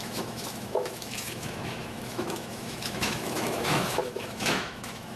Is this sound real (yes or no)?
no